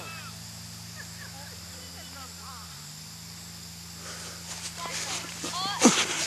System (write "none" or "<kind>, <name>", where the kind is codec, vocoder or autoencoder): none